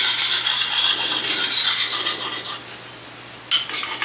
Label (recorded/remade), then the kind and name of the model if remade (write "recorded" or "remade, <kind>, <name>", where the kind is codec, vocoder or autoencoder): recorded